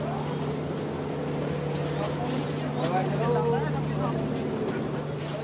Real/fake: real